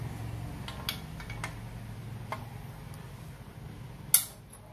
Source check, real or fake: real